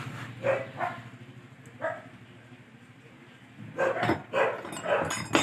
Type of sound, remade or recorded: recorded